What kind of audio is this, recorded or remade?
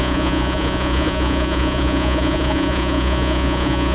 remade